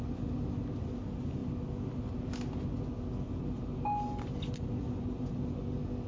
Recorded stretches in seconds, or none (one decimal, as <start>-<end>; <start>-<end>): 0.0-6.1